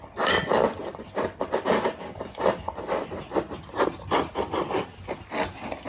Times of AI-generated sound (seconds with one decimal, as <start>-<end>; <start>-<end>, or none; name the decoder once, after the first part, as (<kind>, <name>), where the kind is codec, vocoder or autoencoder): 0.8-4.3 (vocoder, BigVGAN v2)